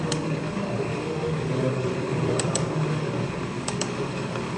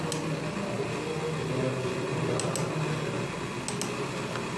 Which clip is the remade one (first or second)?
first